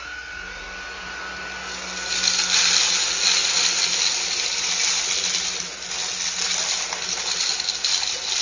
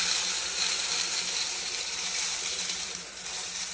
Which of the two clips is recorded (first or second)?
first